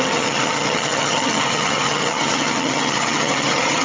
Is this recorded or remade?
remade